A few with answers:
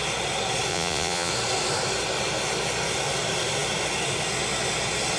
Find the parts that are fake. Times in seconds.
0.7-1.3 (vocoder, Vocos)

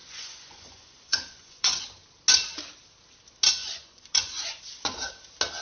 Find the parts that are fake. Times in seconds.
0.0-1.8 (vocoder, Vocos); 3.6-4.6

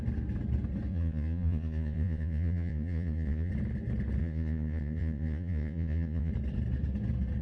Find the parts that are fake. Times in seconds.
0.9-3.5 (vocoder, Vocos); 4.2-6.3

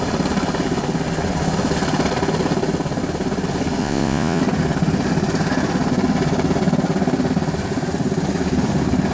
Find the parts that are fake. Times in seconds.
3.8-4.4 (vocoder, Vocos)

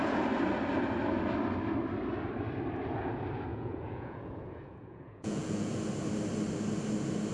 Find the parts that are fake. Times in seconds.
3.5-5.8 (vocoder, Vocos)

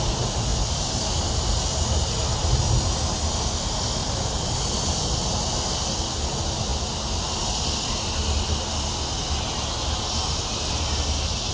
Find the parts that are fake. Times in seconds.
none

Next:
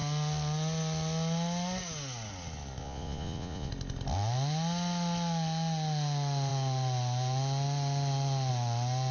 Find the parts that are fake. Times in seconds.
2.8-3.7 (vocoder, Vocos)

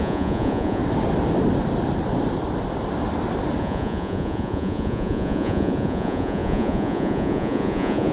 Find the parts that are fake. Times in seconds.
0.0-0.8 (vocoder, Vocos); 3.6-8.1